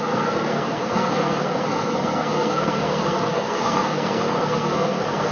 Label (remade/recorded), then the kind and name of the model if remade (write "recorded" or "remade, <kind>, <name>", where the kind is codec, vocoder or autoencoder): remade, codec, SNAC